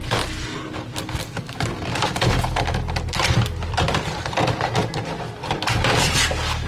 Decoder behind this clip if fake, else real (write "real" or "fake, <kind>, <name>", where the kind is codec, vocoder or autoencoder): real